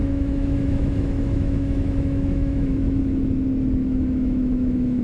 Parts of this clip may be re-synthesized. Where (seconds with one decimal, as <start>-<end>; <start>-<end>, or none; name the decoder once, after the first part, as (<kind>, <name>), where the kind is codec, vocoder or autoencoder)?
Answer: 0.0-3.0 (autoencoder, DAC-VAE); 3.8-5.0